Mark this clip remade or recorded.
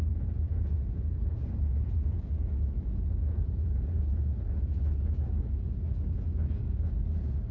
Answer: remade